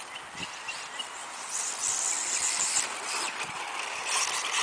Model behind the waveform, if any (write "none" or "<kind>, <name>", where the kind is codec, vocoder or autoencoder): none